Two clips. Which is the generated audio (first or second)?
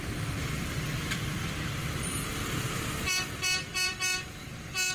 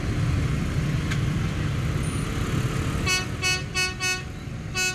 first